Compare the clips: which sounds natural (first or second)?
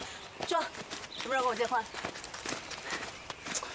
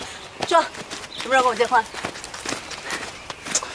second